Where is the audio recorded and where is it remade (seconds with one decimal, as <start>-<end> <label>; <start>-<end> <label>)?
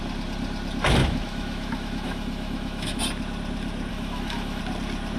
0.0-1.0 recorded; 1.0-3.0 remade; 3.0-3.9 recorded; 3.9-4.6 remade; 4.6-5.2 recorded